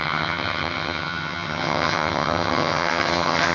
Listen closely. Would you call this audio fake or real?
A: fake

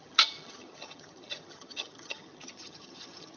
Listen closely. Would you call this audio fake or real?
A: fake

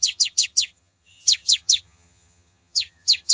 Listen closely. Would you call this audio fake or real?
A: fake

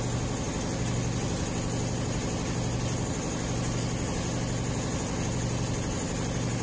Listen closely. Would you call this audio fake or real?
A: real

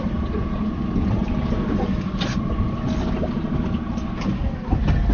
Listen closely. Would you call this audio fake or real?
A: real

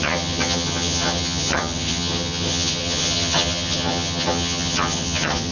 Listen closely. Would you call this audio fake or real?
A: fake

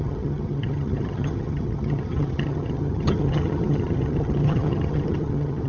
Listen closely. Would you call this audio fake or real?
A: fake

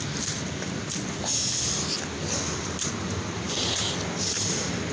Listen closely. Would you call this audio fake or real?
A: real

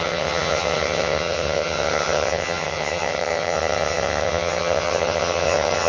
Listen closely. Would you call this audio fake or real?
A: fake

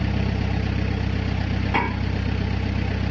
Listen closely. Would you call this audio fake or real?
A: real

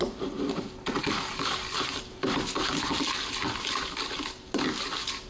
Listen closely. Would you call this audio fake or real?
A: real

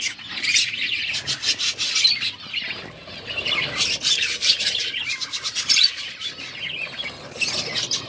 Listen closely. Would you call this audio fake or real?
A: real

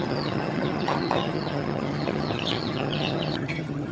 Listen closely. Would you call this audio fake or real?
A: fake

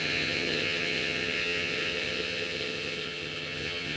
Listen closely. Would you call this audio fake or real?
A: fake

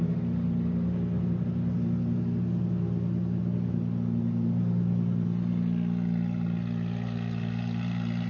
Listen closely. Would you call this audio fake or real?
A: real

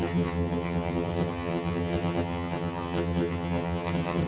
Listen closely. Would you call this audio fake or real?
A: fake